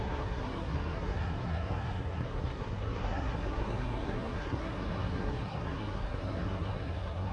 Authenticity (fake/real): fake